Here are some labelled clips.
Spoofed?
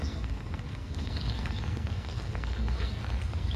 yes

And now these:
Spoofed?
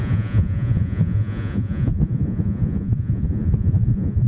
yes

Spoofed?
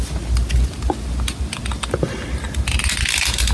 no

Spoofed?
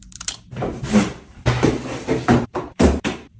yes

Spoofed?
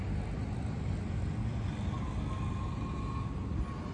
no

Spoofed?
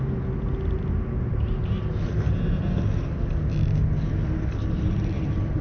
no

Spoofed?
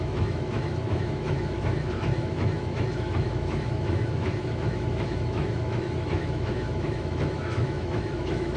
yes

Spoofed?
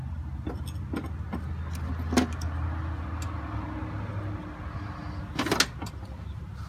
no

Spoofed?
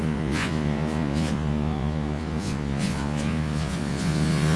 yes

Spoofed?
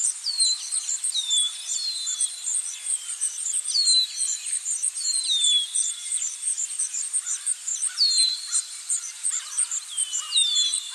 yes